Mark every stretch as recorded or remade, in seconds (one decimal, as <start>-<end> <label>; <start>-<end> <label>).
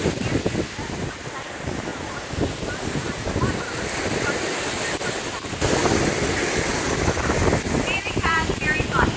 0.0-9.2 recorded